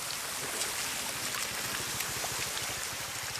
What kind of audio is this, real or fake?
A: real